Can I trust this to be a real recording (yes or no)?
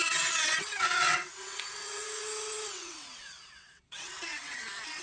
no